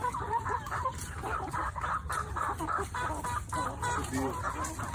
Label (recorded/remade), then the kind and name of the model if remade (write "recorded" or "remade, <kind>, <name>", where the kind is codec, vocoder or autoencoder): recorded